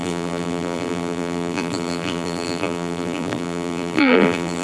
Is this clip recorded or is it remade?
remade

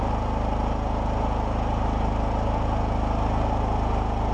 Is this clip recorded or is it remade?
recorded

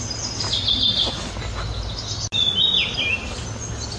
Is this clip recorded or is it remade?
recorded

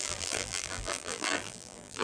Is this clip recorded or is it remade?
remade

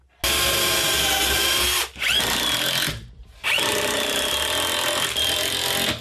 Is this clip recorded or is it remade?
recorded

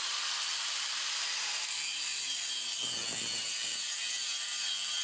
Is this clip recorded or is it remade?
remade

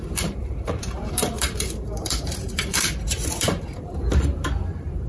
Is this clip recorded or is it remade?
remade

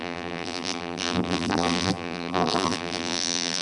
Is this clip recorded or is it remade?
remade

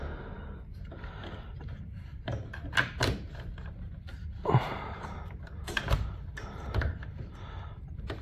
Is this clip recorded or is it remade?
remade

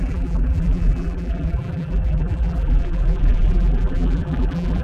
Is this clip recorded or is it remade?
remade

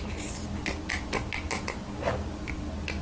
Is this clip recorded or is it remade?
recorded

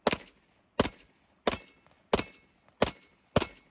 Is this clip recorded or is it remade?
recorded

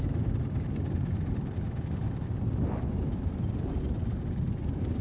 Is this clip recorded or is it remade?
recorded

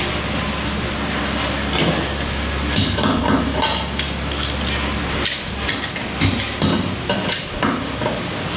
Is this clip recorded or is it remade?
recorded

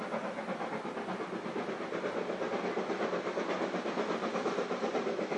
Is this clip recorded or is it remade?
recorded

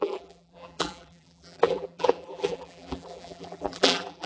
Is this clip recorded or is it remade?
remade